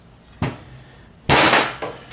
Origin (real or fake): real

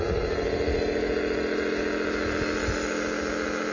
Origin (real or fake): real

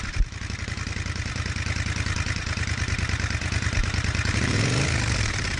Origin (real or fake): fake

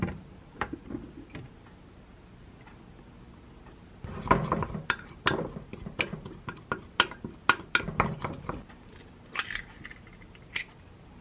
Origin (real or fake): real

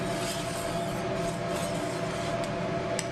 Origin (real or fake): real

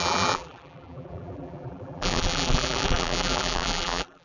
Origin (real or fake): fake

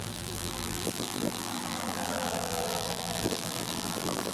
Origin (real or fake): fake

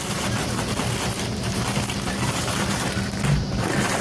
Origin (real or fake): fake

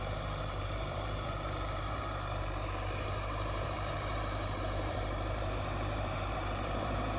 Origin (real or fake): fake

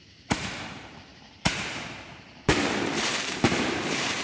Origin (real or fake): fake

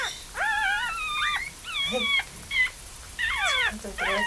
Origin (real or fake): fake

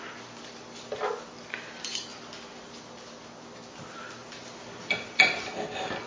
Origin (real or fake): fake